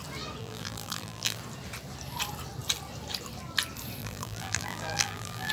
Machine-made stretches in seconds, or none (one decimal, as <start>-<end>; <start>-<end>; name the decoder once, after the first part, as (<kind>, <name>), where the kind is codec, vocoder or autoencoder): 0.4-1.4 (vocoder, BigVGAN v2); 4.0-5.5